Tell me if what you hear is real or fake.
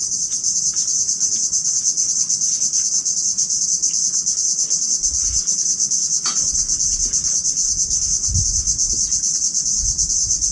real